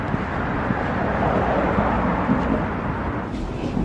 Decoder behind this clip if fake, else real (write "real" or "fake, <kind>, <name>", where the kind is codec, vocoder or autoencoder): real